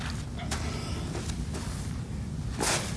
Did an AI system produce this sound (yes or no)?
no